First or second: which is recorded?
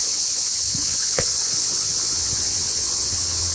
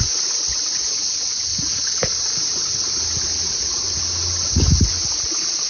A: second